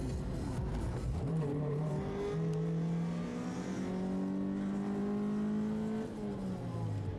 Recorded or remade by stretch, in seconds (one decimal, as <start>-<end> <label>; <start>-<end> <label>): 0.0-0.7 recorded; 0.7-1.9 remade; 1.9-7.2 recorded